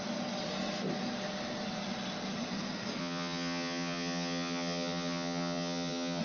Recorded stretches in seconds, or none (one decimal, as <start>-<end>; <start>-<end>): 0.0-3.0